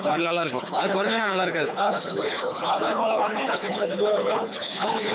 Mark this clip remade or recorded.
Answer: remade